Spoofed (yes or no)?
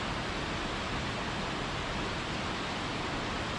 no